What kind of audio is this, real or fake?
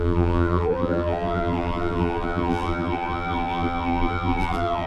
fake